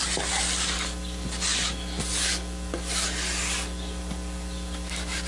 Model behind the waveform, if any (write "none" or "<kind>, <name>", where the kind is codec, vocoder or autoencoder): none